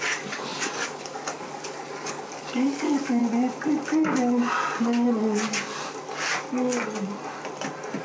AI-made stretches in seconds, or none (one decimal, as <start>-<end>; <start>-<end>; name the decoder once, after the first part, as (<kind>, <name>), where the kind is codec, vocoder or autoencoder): 0.0-3.2 (codec, DAC)